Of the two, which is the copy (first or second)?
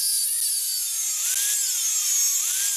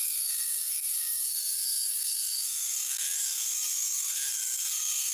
second